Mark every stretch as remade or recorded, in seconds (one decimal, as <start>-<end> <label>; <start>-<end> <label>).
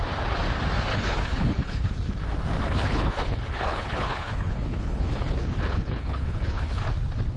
0.0-0.9 recorded; 0.9-1.9 remade; 1.9-2.6 recorded; 2.6-6.8 remade; 6.8-7.4 recorded